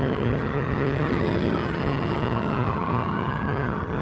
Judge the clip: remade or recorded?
remade